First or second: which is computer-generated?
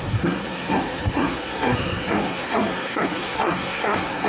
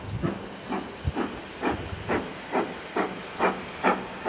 first